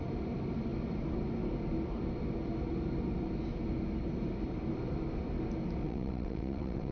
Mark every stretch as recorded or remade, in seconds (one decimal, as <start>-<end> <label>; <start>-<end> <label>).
0.0-5.8 recorded; 5.8-6.9 remade